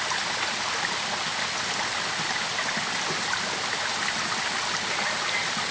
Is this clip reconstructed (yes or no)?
no